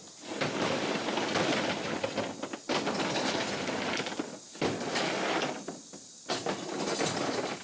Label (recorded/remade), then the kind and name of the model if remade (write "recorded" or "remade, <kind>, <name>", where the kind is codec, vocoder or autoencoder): recorded